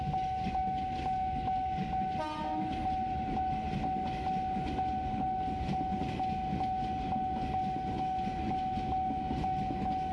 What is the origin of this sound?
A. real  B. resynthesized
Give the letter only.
A